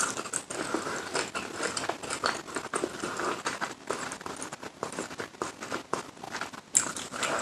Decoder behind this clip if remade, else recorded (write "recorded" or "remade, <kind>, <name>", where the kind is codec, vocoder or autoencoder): recorded